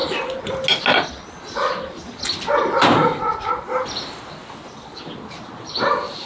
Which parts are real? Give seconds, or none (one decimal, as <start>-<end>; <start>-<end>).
0.0-6.3